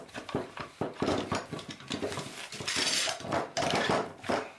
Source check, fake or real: fake